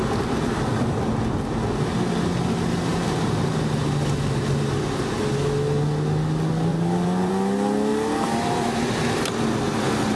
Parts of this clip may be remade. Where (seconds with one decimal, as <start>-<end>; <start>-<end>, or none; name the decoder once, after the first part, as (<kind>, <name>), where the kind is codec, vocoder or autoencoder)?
2.9-3.5 (vocoder, BigVGAN v2); 6.7-7.3; 7.9-8.8